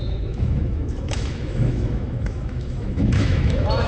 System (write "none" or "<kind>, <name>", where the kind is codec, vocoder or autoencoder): autoencoder, DAC-VAE